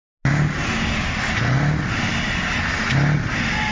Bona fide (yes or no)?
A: yes